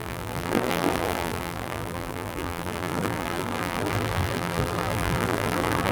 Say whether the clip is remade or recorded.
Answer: remade